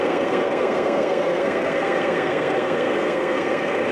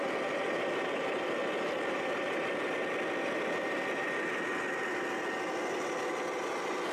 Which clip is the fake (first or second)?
first